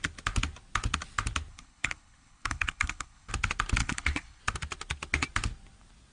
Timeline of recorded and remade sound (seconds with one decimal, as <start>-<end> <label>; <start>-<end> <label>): 0.0-1.5 recorded; 1.5-3.3 remade; 3.3-3.8 recorded; 3.8-4.4 remade; 4.4-6.1 recorded